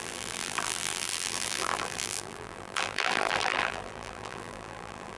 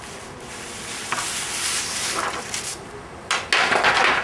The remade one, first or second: first